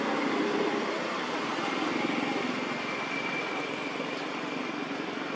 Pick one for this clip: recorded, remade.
recorded